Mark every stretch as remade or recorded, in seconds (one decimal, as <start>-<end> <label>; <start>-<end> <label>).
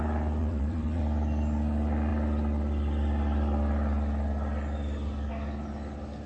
0.0-0.4 recorded; 0.4-1.0 remade; 1.0-6.3 recorded